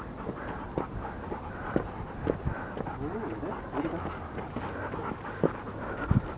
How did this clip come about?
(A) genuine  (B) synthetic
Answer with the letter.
A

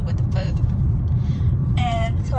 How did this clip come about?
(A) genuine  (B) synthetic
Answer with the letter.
B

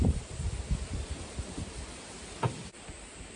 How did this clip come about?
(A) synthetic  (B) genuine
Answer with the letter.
A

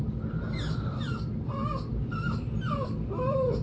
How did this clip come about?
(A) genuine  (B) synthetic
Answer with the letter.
A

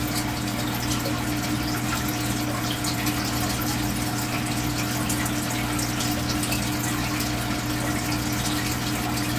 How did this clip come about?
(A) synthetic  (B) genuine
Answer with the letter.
B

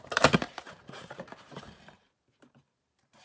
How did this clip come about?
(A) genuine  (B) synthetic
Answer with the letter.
B